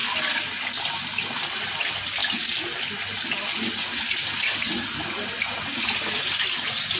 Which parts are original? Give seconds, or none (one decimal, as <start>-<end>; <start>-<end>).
0.0-7.0